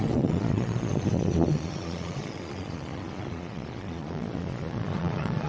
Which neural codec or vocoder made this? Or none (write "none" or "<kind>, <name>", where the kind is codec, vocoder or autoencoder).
vocoder, Vocos